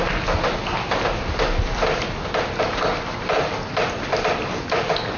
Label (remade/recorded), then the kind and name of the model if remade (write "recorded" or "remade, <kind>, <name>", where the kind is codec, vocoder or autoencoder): recorded